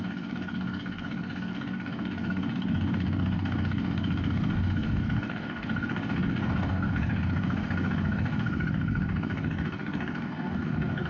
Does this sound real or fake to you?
fake